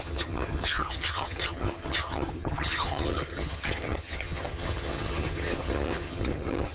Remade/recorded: remade